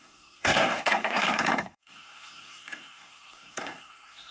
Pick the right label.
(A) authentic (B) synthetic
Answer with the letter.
B